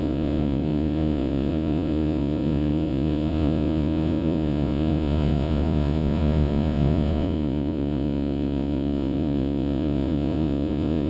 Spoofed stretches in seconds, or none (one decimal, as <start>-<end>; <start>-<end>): 0.0-11.1